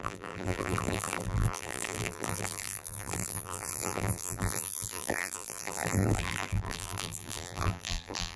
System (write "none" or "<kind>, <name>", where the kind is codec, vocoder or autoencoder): vocoder, BigVGAN v2